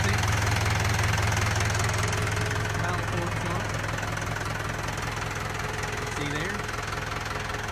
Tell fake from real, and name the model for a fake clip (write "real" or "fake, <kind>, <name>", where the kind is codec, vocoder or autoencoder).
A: real